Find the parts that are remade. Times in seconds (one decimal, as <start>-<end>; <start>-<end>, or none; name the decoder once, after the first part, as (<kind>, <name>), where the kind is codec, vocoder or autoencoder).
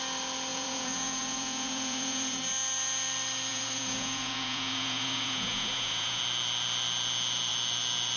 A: 0.5-2.4 (vocoder, Vocos); 3.5-6.2